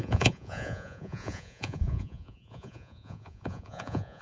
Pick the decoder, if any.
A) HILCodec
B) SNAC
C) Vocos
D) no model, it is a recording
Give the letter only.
C